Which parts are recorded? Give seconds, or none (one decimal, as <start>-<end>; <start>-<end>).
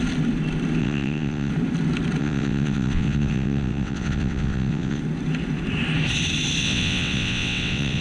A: 0.0-0.8; 1.5-2.2; 5.0-6.6